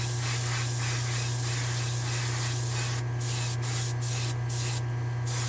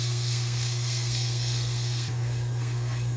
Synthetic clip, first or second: second